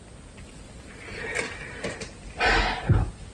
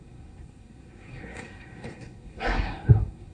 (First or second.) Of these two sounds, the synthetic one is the second